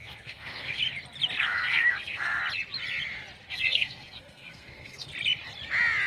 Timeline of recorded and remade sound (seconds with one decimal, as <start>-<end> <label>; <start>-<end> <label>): 0.0-0.8 remade; 0.8-1.4 recorded; 1.4-2.4 remade; 2.4-3.5 recorded; 3.5-5.1 remade; 5.1-6.1 recorded